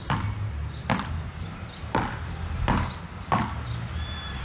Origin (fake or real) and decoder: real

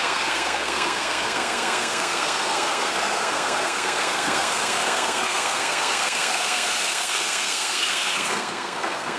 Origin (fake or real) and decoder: fake, codec, SNAC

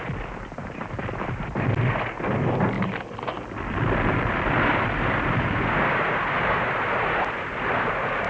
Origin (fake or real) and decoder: real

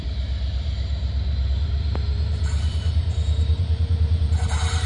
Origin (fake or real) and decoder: fake, vocoder, BigVGAN v2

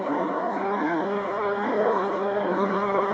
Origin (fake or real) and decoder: fake, codec, SNAC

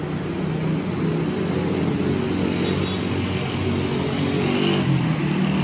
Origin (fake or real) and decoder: real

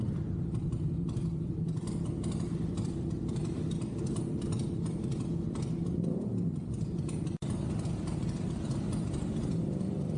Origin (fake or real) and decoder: fake, vocoder, BigVGAN v2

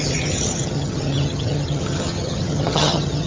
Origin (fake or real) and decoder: fake, vocoder, HiFi-GAN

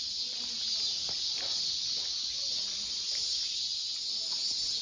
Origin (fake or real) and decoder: real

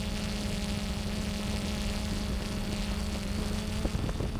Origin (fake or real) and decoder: real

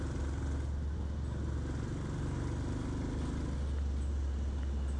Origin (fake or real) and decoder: real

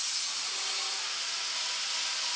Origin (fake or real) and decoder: real